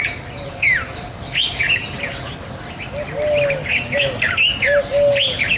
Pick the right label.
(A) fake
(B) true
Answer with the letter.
B